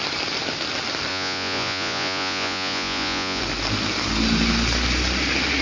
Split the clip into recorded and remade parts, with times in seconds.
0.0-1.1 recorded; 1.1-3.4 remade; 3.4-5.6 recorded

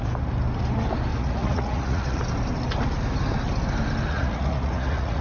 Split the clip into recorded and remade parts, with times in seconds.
0.0-1.1 recorded; 1.1-2.2 remade; 2.2-4.1 recorded; 4.1-5.2 remade

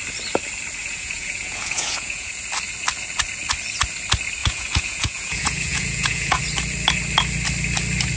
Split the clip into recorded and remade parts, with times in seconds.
0.0-0.8 recorded; 0.8-2.3 remade; 2.3-4.4 recorded; 4.4-6.4 remade; 6.4-8.2 recorded

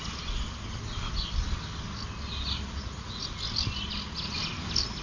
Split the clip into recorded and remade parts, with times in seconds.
0.0-2.8 recorded; 2.8-3.3 remade; 3.3-5.0 recorded

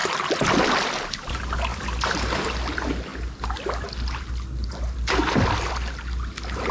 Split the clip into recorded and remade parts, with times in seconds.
0.0-6.7 recorded

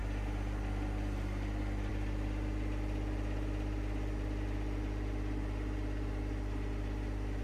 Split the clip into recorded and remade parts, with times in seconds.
0.0-7.4 recorded

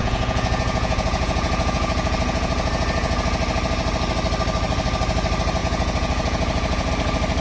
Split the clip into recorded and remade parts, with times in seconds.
0.0-3.2 remade; 3.2-5.6 recorded; 5.6-6.9 remade; 6.9-7.4 recorded

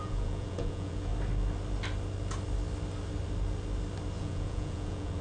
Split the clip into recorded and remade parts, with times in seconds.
0.0-1.1 remade; 1.1-4.2 recorded; 4.2-5.2 remade